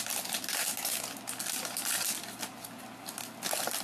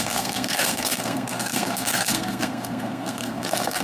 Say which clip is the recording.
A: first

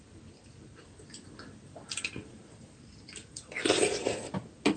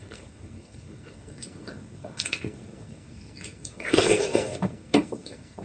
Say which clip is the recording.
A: first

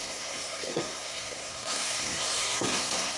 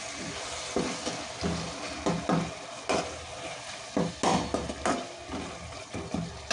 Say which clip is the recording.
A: second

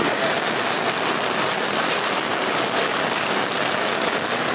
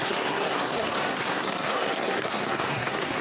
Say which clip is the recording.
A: first